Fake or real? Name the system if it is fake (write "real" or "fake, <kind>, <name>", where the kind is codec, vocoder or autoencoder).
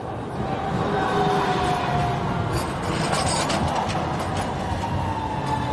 real